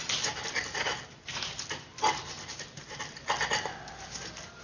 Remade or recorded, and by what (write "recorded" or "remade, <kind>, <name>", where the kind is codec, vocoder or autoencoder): recorded